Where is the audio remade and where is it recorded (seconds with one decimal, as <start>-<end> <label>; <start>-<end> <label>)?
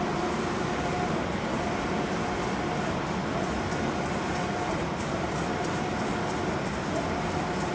0.0-0.9 remade; 0.9-5.0 recorded; 5.0-6.1 remade; 6.1-7.7 recorded